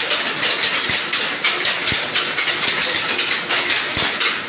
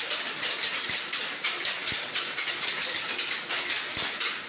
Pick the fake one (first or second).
second